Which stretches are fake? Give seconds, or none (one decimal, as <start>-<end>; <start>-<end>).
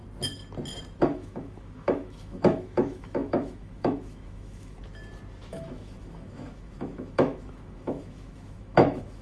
1.0-4.8; 5.5-9.2